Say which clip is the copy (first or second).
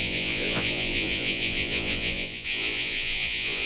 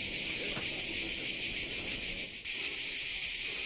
first